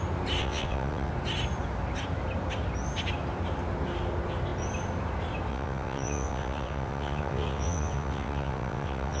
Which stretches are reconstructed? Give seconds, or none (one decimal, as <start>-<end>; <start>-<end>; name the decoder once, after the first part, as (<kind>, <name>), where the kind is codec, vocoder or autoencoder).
0.4-1.1 (vocoder, WaveNeXt); 5.5-9.2